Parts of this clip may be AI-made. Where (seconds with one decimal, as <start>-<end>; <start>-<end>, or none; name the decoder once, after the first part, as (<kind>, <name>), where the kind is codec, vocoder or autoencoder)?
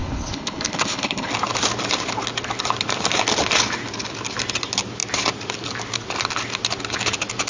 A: 0.0-1.3 (codec, HILCodec)